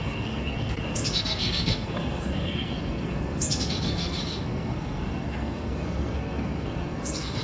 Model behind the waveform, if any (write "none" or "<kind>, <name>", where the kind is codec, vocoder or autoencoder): codec, SNAC